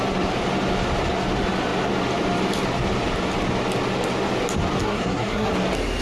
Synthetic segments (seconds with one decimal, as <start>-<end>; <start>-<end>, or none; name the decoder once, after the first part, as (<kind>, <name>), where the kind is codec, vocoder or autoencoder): 4.8-5.5 (codec, SNAC)